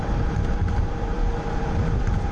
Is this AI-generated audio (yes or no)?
yes